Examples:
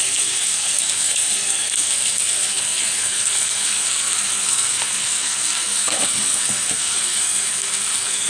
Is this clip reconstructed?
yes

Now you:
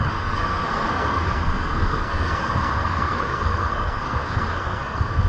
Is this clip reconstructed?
yes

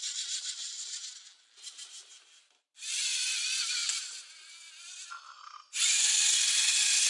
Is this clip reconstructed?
no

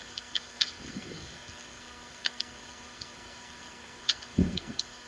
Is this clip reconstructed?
yes